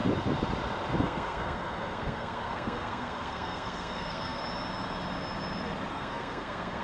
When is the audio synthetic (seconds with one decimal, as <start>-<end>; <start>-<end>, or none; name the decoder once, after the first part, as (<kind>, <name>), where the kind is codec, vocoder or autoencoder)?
1.0-4.4 (codec, SNAC); 5.9-6.8